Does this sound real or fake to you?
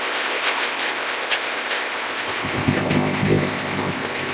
fake